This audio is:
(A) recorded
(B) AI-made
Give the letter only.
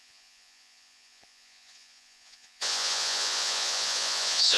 B